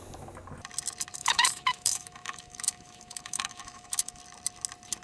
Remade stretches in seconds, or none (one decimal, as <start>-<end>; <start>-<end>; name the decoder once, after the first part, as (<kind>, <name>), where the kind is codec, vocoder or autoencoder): 1.2-4.2 (autoencoder, DAC-VAE)